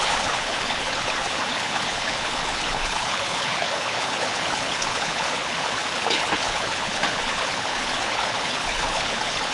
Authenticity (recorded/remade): remade